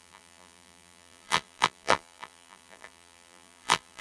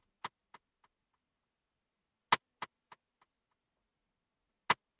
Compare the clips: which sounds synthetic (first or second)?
first